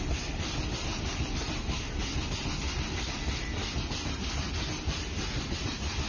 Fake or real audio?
real